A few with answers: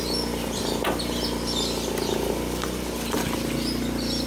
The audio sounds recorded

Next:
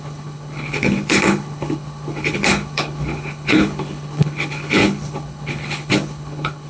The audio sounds remade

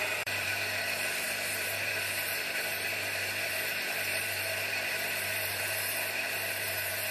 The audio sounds remade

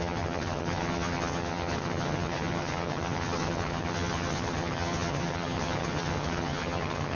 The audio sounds remade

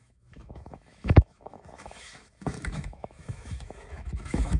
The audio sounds remade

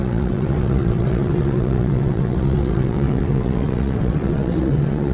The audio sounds remade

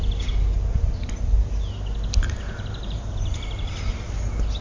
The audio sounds recorded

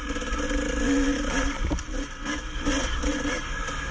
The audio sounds recorded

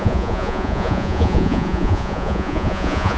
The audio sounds remade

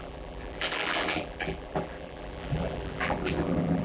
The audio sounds remade